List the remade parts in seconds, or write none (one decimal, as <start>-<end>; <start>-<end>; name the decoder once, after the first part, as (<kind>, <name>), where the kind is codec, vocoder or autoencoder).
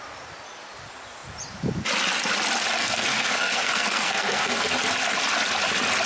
2.8-4.7 (codec, SNAC)